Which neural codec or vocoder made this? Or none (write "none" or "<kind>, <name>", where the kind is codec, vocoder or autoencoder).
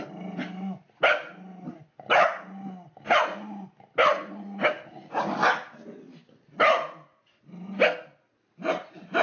none